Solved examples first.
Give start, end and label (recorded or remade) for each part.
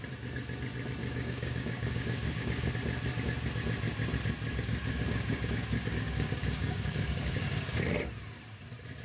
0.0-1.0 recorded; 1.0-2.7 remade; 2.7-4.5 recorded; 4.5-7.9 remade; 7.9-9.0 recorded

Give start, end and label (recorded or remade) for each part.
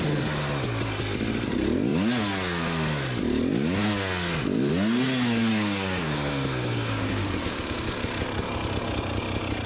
0.0-5.5 recorded; 5.5-7.9 remade; 7.9-9.7 recorded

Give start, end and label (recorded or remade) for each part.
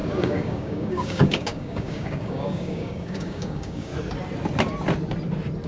0.0-3.9 remade; 3.9-5.7 recorded